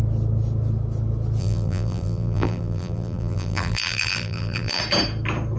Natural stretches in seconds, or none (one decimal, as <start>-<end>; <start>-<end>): 0.0-1.4; 4.8-5.6